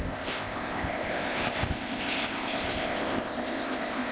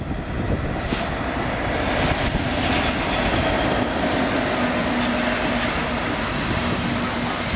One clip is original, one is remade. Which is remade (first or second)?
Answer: first